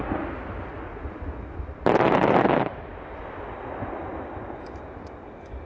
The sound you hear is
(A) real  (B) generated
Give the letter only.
A